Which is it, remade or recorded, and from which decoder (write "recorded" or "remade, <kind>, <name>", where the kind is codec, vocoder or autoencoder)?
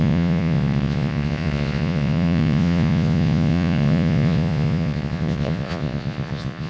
remade, vocoder, Vocos